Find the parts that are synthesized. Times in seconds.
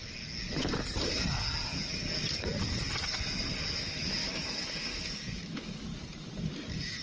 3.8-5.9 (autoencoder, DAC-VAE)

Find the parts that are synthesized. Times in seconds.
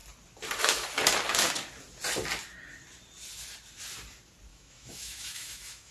4.5-5.9 (autoencoder, DAC-VAE)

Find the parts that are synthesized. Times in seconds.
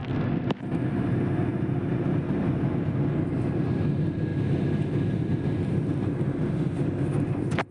none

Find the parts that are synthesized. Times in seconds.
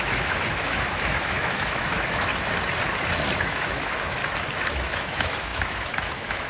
0.0-2.3 (autoencoder, DAC-VAE); 3.4-4.2; 4.7-6.5